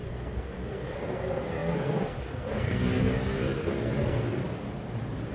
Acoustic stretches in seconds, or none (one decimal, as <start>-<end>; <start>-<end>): 4.4-5.3